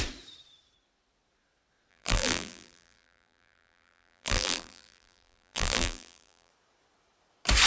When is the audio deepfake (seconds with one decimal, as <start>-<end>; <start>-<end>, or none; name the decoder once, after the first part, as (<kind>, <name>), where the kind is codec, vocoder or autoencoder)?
1.9-6.5 (vocoder, BigVGAN v2)